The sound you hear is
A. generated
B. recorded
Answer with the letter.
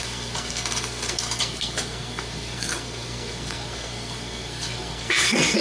A